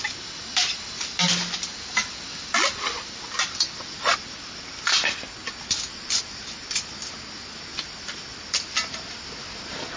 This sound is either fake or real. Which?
real